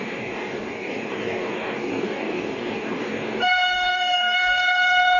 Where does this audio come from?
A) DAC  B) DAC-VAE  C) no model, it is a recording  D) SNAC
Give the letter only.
A